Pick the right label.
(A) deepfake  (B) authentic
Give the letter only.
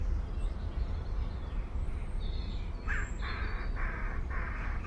A